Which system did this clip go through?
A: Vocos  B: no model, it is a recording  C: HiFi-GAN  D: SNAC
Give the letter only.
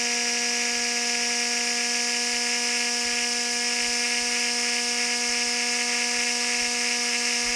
B